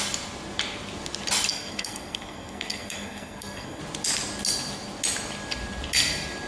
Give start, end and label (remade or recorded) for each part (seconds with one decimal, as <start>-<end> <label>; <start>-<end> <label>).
0.0-1.5 recorded; 1.5-3.8 remade; 3.8-6.5 recorded

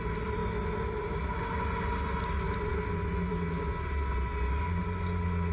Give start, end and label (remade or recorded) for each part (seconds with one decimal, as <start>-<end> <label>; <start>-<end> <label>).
0.0-5.5 recorded